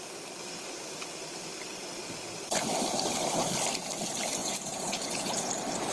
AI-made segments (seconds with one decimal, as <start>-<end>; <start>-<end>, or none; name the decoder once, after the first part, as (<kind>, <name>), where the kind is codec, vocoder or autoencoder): 4.4-5.5 (vocoder, Vocos)